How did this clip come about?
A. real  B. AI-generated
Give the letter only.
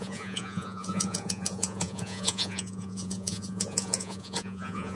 B